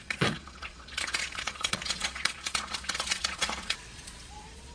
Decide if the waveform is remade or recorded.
remade